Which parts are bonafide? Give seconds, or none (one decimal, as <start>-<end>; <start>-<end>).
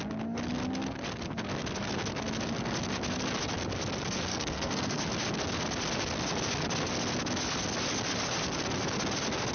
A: 0.0-4.3; 5.0-9.5